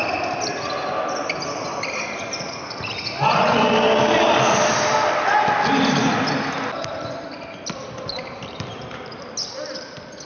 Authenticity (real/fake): real